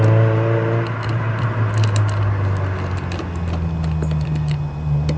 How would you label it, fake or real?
real